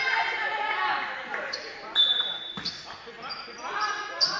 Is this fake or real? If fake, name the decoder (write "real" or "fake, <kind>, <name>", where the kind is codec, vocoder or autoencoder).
real